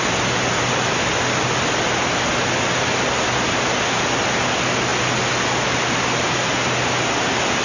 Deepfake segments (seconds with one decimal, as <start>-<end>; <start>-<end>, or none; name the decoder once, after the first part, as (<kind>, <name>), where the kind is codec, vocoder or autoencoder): none